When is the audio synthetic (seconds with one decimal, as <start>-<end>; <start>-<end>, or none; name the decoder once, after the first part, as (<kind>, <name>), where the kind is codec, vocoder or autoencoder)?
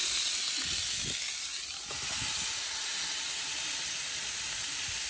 none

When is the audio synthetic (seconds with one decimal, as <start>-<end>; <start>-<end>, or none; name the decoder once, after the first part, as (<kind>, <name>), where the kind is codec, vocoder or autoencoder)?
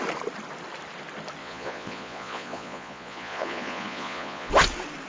1.4-4.5 (vocoder, Vocos)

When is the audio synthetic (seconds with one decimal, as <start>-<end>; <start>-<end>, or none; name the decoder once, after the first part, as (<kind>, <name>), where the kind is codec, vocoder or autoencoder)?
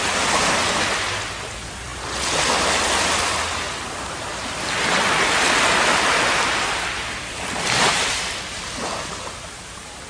none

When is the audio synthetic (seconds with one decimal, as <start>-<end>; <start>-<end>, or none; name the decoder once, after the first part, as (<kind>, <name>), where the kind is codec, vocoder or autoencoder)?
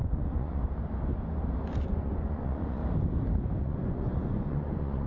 0.0-0.6 (vocoder, Vocos); 1.9-2.8; 3.6-5.1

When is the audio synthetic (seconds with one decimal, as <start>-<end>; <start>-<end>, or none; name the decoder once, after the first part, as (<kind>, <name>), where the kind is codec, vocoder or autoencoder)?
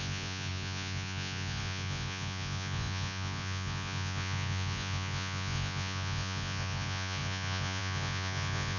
0.0-8.8 (vocoder, Vocos)